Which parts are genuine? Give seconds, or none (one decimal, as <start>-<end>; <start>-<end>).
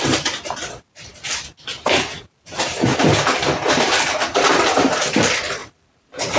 1.1-2.2; 3.1-3.7